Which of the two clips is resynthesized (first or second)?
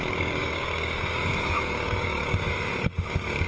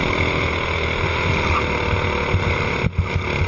first